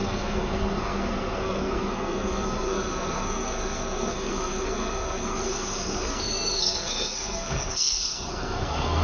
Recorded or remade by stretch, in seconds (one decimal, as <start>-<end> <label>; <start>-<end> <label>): 0.0-9.0 remade